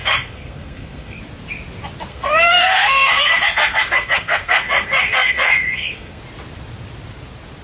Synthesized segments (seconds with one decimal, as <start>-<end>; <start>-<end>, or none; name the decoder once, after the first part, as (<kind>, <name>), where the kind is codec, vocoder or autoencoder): 0.0-1.2 (codec, SNAC); 2.1-6.2